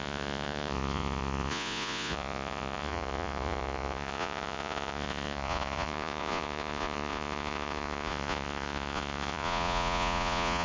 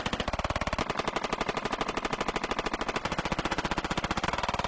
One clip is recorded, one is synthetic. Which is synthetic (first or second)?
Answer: first